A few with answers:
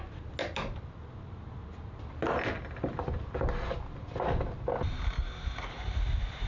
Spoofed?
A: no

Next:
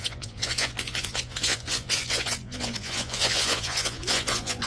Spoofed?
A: yes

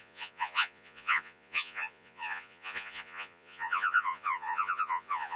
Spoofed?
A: yes